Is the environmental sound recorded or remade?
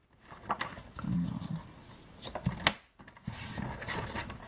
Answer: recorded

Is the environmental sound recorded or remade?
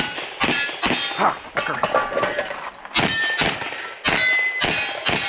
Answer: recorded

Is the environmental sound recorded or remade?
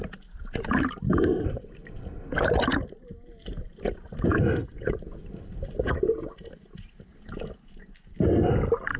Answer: recorded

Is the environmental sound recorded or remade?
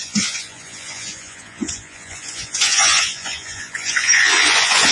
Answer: remade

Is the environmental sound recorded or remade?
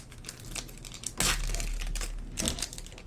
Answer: recorded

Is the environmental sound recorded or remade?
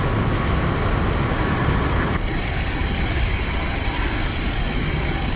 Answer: recorded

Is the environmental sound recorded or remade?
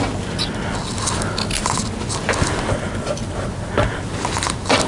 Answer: recorded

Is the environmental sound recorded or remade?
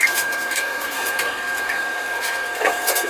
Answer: remade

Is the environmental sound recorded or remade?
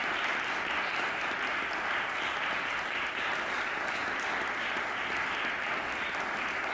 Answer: recorded